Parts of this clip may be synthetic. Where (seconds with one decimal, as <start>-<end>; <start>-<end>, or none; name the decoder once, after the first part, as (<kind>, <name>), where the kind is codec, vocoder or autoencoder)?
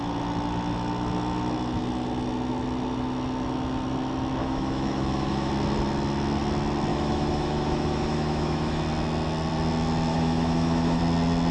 4.4-5.5 (autoencoder, DAC-VAE); 6.9-8.8; 10.1-11.0